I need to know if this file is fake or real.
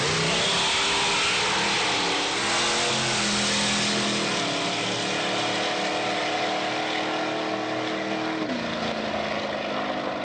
real